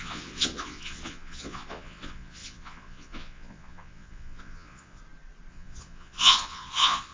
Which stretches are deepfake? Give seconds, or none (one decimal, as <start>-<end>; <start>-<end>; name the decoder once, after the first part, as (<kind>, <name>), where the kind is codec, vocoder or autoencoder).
0.0-5.0 (vocoder, Vocos); 5.5-7.1